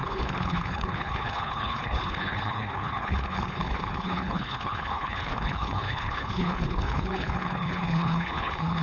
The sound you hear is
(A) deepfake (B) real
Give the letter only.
A